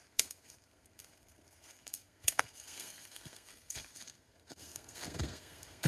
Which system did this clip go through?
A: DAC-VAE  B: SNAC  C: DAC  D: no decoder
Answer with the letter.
B